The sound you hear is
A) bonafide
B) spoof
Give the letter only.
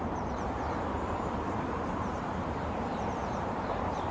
B